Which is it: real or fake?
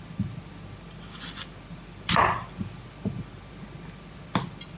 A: real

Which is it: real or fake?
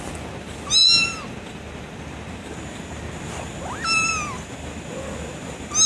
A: real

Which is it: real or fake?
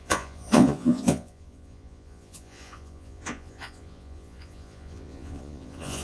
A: fake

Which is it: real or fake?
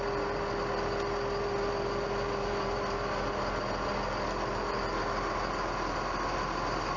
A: real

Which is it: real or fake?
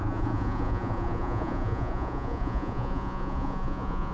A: fake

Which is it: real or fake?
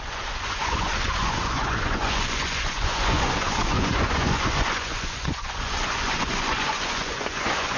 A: fake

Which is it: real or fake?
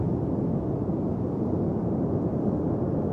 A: real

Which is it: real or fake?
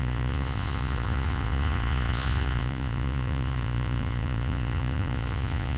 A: fake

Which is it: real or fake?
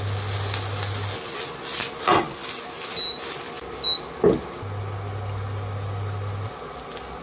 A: real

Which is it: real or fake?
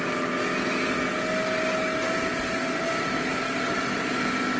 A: real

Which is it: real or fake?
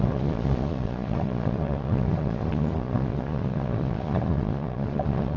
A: fake